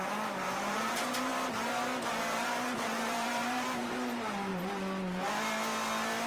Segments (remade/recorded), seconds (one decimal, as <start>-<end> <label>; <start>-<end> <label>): 0.0-1.3 remade; 1.3-2.2 recorded; 2.2-4.5 remade; 4.5-6.3 recorded